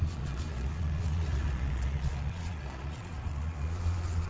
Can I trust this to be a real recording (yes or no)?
no